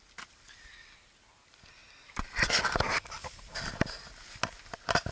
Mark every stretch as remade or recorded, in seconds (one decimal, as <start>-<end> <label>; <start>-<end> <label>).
0.0-5.1 recorded